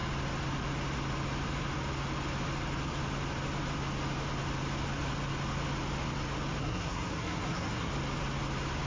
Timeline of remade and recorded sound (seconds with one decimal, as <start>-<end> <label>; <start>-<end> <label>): 0.0-6.6 recorded; 6.6-7.9 remade; 7.9-8.9 recorded